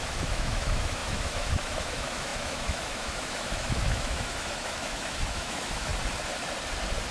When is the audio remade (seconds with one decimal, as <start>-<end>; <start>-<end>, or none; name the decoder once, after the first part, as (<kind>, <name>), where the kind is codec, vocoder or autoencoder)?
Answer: 0.0-5.9 (autoencoder, DAC-VAE)